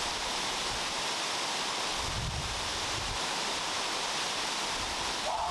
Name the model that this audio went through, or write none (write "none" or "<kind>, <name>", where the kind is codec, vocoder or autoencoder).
none